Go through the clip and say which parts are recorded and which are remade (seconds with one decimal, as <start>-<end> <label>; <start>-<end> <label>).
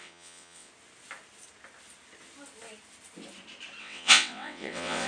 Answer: 0.0-0.7 remade; 0.7-3.8 recorded; 3.8-5.1 remade